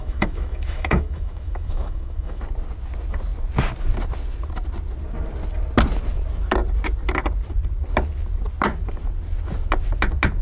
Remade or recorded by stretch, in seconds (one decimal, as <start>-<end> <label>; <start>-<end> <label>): 0.0-2.4 remade; 2.4-10.4 recorded